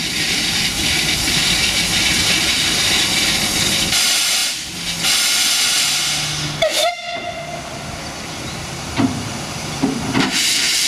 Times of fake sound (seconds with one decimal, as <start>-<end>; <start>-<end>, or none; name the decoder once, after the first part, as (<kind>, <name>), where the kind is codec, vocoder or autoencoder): 0.0-4.4 (vocoder, BigVGAN v2); 8.3-10.9